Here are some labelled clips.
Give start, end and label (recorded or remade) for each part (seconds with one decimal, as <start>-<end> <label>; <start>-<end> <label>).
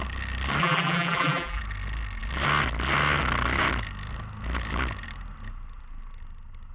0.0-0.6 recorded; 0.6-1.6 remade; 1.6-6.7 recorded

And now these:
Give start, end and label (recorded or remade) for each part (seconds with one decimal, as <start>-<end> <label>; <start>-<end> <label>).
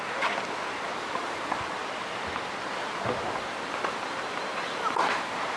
0.0-5.6 recorded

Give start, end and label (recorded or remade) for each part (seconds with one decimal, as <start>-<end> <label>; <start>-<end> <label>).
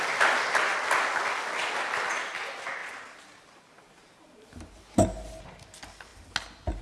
0.0-2.8 recorded; 2.8-5.6 remade; 5.6-6.8 recorded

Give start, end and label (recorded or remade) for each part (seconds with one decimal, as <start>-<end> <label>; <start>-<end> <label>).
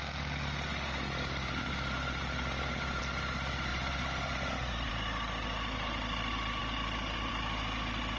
0.0-0.7 recorded; 0.7-3.0 remade; 3.0-3.7 recorded; 3.7-4.9 remade; 4.9-8.2 recorded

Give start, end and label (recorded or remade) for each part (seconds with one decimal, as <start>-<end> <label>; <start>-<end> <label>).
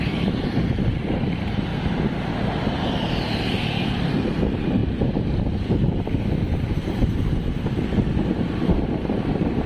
0.0-1.7 remade; 1.7-2.4 recorded; 2.4-9.7 remade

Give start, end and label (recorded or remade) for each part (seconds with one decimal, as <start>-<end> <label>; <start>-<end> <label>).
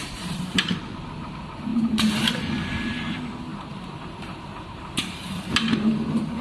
0.0-0.7 remade; 0.7-1.7 recorded; 1.7-2.5 remade; 2.5-3.5 recorded; 3.5-5.3 remade; 5.3-6.4 recorded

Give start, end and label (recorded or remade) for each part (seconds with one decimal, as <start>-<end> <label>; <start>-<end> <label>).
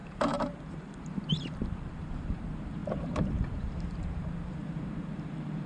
0.0-5.7 remade